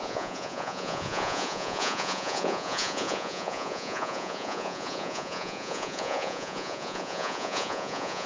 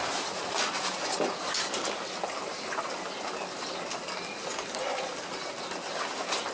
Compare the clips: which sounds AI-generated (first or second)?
first